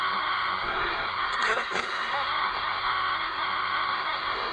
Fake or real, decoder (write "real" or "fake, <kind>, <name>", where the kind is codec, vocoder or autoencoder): fake, codec, SNAC